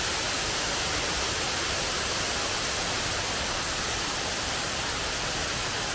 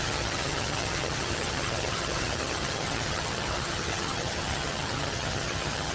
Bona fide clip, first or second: first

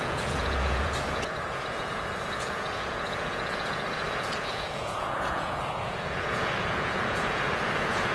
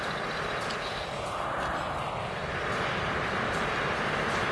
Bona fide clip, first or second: second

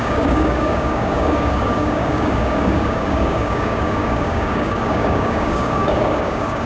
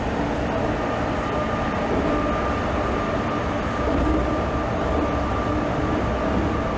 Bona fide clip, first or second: second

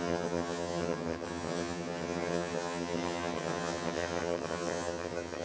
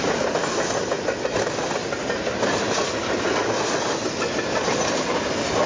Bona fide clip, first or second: second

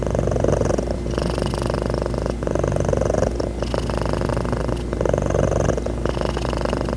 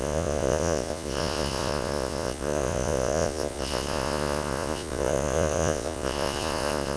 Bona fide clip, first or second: first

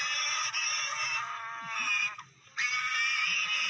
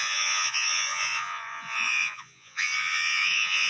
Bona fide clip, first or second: first